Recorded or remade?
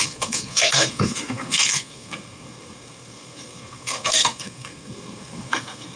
remade